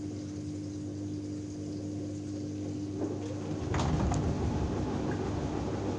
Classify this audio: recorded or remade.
recorded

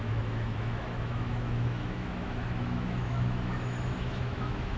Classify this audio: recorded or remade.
remade